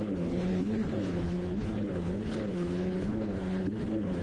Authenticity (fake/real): fake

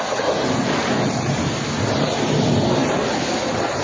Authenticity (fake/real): real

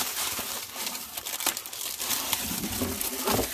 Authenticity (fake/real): fake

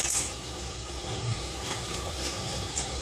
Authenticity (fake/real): fake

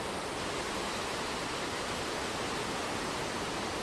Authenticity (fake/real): real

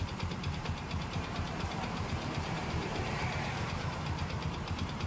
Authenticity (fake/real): fake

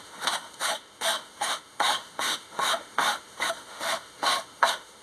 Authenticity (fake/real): fake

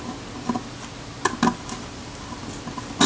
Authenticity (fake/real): real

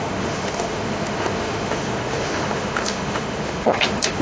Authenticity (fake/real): fake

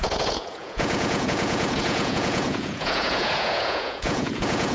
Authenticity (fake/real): fake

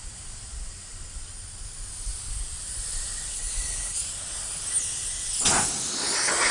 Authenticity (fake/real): real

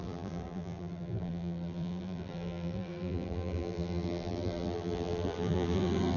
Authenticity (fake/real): fake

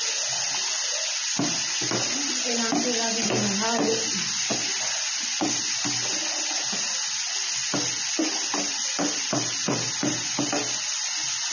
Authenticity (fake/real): real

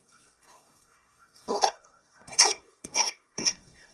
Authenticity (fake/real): fake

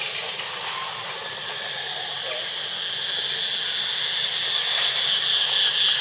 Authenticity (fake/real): real